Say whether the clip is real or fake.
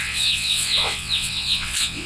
fake